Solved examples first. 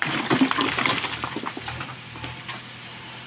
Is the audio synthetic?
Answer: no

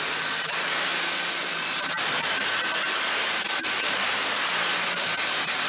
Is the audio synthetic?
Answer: no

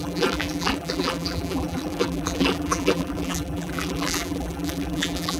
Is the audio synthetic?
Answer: yes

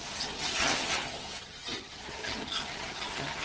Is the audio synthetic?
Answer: yes